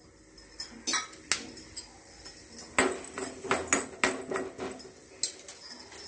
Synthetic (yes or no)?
no